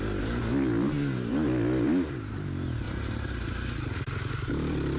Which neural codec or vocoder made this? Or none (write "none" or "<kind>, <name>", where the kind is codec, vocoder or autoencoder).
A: none